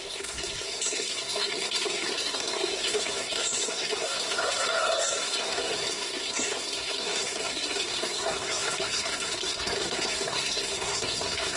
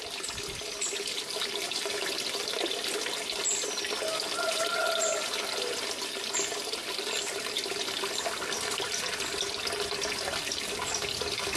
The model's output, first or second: first